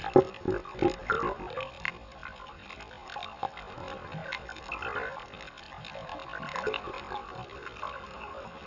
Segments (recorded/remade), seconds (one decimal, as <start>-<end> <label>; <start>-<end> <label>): 0.0-8.7 recorded